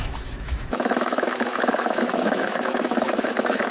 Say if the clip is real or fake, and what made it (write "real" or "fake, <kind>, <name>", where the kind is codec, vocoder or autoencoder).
fake, autoencoder, DAC-VAE